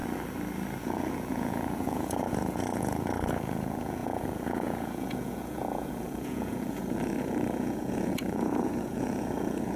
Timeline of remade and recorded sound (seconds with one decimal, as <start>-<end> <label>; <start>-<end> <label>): 0.0-0.8 recorded; 0.8-9.8 remade